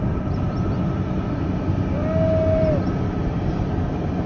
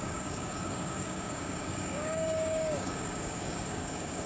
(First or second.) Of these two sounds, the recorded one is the first